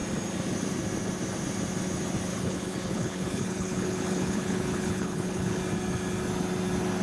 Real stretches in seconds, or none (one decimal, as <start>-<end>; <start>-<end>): 0.0-2.3; 5.6-7.0